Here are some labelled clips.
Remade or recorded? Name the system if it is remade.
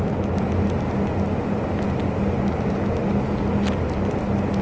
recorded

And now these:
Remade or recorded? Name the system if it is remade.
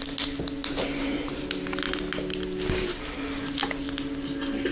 recorded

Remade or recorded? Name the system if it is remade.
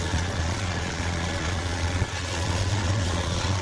remade, vocoder, Vocos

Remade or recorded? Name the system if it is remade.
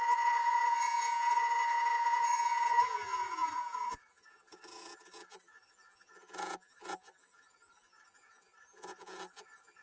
remade, vocoder, Vocos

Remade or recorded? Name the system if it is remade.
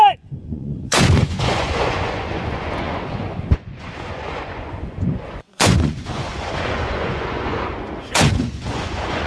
remade, vocoder, Vocos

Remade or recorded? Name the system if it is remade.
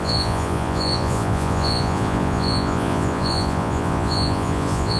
remade, vocoder, Vocos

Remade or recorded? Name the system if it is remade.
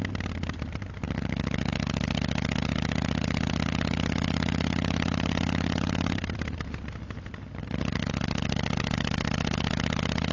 recorded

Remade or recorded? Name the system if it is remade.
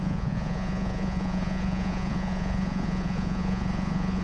remade, vocoder, Vocos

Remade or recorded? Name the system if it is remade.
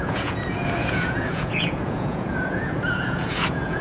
remade, vocoder, Vocos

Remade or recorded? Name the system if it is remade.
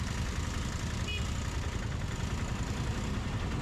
recorded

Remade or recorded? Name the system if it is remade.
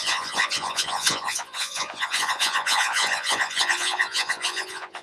remade, vocoder, Vocos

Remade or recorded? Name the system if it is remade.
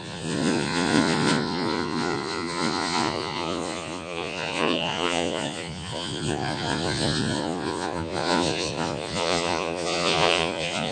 remade, vocoder, Vocos